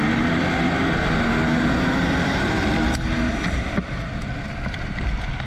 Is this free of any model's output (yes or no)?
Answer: yes